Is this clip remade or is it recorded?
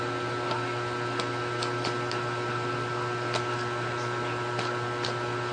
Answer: recorded